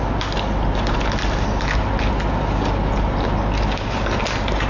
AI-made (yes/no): no